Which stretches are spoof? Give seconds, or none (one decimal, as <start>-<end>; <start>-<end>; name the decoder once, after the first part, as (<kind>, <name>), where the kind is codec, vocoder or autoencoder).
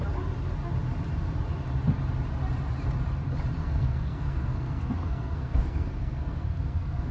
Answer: 3.6-7.1 (codec, SNAC)